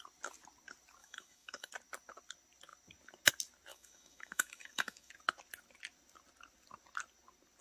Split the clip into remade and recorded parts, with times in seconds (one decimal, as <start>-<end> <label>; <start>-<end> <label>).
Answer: 0.0-1.0 recorded; 1.0-1.7 remade; 1.7-3.7 recorded; 3.7-5.1 remade; 5.1-7.6 recorded